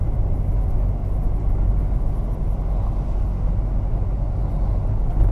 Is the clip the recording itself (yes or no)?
yes